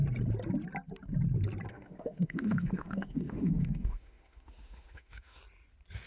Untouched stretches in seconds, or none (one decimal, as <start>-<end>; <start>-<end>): 0.0-1.7; 5.4-6.1